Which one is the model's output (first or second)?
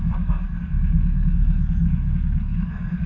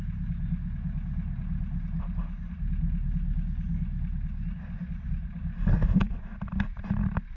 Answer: first